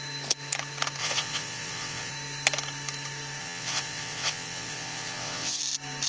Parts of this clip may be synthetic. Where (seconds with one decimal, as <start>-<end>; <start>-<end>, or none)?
1.0-2.1; 3.4-5.6